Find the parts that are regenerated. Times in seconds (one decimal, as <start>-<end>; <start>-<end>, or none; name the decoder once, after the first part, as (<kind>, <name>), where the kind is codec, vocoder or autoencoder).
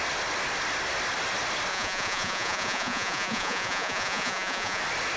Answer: 1.7-4.8 (vocoder, Vocos)